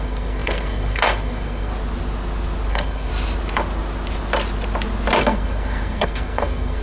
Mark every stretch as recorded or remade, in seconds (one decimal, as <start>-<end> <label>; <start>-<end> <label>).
0.0-1.7 remade; 1.7-2.7 recorded; 2.7-3.1 remade; 3.1-5.2 recorded; 5.2-6.8 remade